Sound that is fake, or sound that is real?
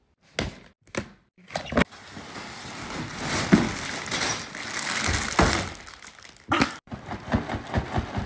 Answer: real